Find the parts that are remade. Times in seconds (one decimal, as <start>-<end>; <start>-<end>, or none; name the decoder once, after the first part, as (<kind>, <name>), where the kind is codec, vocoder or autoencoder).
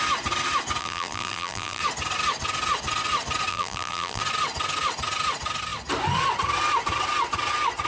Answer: 0.8-1.8 (vocoder, BigVGAN v2); 3.5-4.2